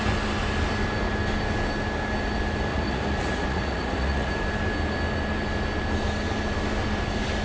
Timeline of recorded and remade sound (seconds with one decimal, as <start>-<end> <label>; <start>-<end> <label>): 0.0-2.7 recorded; 2.7-4.3 remade; 4.3-7.4 recorded